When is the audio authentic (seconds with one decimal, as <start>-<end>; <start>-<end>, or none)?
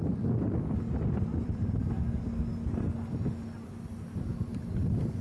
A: 1.8-4.5